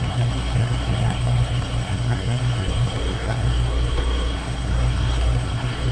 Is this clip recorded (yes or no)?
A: no